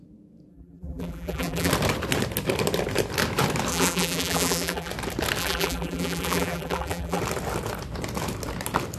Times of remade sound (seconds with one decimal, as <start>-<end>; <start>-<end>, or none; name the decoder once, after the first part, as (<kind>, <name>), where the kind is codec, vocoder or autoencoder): 0.5-1.7 (vocoder, BigVGAN v2); 3.7-4.9; 5.4-7.2